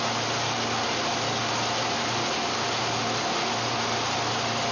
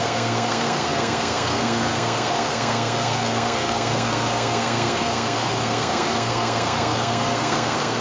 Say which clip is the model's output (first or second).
second